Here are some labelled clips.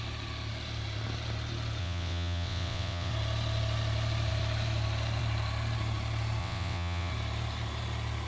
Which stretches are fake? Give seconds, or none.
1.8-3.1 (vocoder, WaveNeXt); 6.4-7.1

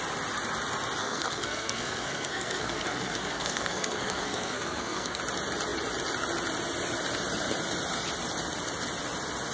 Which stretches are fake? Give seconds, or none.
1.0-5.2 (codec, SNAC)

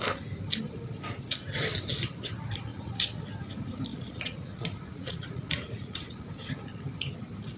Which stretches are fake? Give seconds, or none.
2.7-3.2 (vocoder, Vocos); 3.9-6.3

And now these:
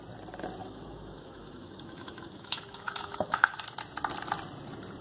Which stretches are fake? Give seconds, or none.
0.6-3.6 (autoencoder, DAC-VAE)